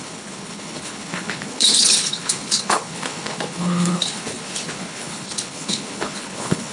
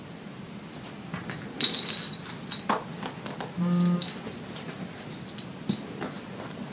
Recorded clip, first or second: second